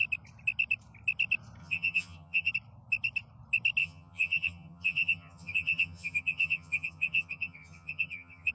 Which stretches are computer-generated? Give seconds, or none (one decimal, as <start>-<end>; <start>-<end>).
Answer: 1.6-2.5; 3.8-8.5